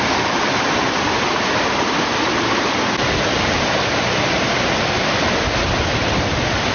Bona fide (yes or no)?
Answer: yes